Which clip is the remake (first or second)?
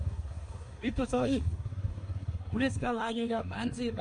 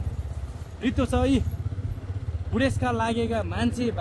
first